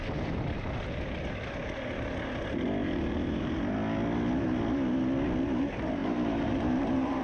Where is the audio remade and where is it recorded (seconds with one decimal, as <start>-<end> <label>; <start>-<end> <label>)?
0.0-2.8 recorded; 2.8-3.5 remade; 3.5-6.0 recorded; 6.0-7.2 remade

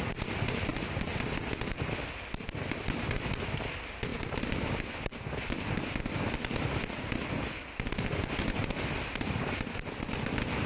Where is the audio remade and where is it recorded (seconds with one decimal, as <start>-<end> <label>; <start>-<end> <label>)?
0.0-10.7 recorded